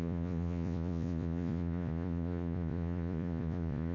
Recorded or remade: remade